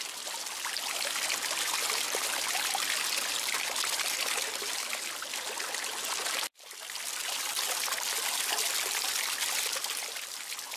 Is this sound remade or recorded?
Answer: recorded